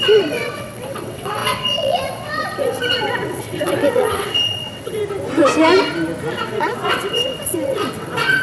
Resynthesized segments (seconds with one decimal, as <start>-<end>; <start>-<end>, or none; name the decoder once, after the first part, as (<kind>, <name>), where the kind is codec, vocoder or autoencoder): 0.0-5.0 (vocoder, WaveNeXt); 6.3-8.4